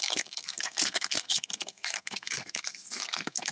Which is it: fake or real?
fake